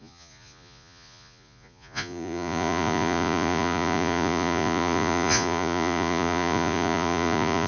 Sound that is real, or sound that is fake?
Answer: fake